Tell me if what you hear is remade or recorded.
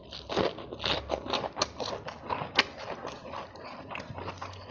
recorded